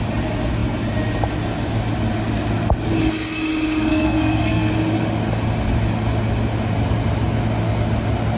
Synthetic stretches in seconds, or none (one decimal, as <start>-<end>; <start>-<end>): 3.9-4.7